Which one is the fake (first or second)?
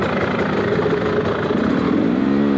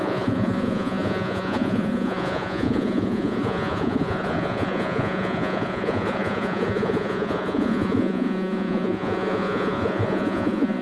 second